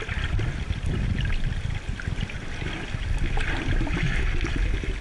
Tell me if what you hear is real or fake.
real